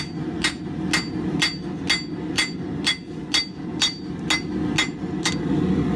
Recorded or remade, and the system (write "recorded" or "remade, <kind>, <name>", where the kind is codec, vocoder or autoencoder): recorded